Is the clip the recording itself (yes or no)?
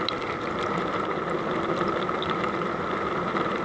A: yes